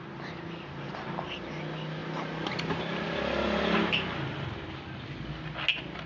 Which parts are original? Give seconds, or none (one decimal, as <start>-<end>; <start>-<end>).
0.0-6.1